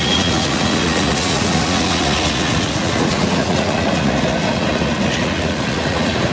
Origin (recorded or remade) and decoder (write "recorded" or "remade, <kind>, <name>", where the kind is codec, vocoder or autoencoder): remade, vocoder, Vocos